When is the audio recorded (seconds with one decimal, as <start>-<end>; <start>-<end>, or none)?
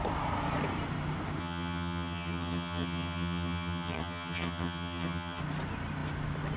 0.0-1.4; 5.4-6.6